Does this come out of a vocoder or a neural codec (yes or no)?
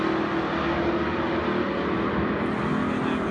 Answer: no